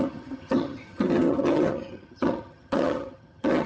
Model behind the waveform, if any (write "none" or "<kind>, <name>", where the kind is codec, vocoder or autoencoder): vocoder, HiFi-GAN